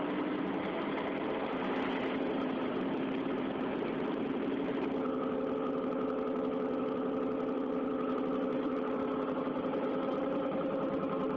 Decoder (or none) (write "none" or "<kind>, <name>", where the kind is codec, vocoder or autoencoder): none